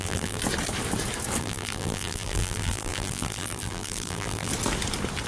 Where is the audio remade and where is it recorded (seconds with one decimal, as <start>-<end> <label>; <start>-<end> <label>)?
0.0-0.4 remade; 0.4-1.4 recorded; 1.4-4.5 remade; 4.5-5.3 recorded

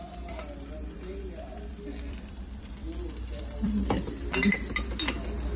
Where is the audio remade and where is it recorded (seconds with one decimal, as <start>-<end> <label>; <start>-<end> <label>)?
0.0-1.7 recorded; 1.7-4.2 remade; 4.2-5.6 recorded

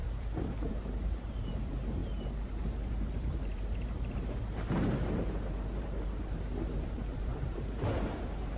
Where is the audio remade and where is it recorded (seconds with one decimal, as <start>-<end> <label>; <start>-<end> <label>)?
0.0-8.6 remade

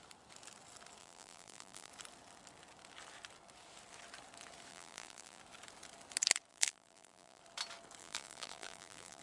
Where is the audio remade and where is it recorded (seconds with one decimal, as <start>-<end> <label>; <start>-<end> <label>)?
0.0-1.0 recorded; 1.0-1.9 remade; 1.9-4.7 recorded; 4.7-5.4 remade; 5.4-6.5 recorded; 6.5-7.4 remade; 7.4-8.0 recorded; 8.0-9.2 remade